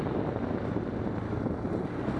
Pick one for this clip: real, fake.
real